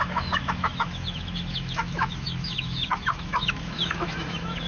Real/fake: fake